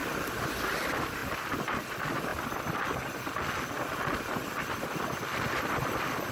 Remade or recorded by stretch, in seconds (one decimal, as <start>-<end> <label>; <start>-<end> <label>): 0.0-0.6 recorded; 0.6-2.3 remade; 2.3-4.6 recorded; 4.6-6.3 remade